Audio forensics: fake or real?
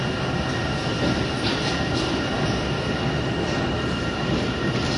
real